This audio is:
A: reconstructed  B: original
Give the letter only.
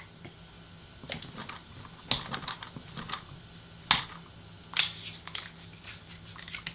B